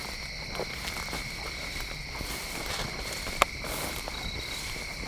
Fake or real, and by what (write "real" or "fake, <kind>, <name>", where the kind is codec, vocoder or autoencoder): real